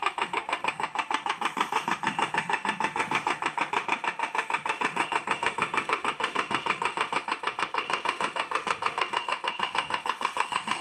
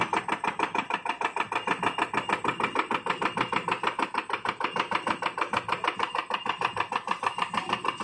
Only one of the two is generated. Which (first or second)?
first